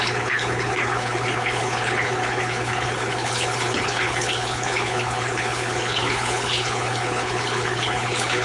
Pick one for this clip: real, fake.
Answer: fake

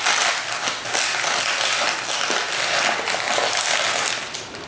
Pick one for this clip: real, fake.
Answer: real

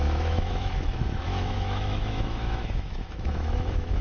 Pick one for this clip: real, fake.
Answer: fake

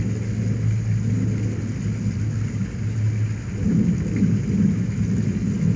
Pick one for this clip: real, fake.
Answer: real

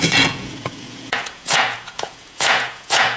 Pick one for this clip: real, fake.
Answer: fake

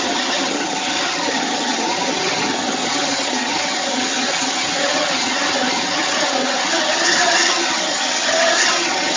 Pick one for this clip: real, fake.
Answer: fake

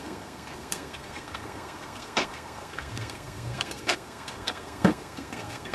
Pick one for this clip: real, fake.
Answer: fake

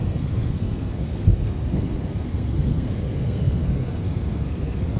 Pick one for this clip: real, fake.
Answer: fake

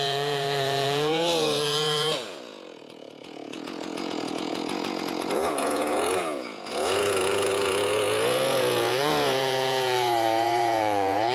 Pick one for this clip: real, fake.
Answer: fake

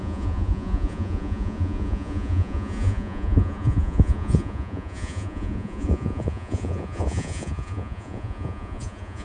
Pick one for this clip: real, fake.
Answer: fake